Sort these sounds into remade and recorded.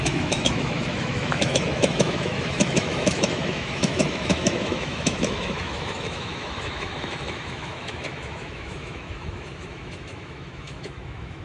remade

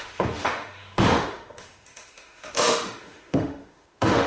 remade